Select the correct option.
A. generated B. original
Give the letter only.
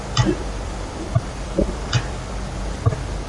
A